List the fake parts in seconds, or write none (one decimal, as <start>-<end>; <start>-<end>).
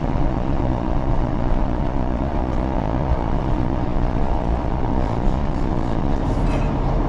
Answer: 0.0-6.2